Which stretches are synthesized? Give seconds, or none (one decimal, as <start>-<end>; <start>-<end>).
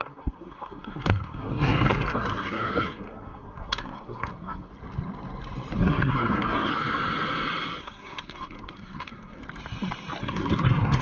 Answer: 0.0-4.7; 5.8-6.7; 7.8-9.4; 10.2-11.0